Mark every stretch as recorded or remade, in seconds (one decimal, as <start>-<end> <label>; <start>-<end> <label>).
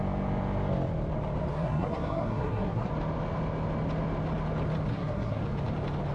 0.0-1.5 recorded; 1.5-2.9 remade; 2.9-4.9 recorded; 4.9-5.4 remade; 5.4-6.1 recorded